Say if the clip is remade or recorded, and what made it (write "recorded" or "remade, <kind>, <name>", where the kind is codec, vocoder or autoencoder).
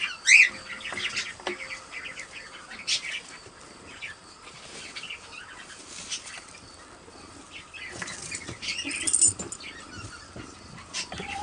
recorded